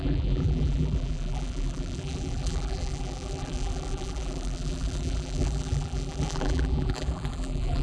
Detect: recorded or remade remade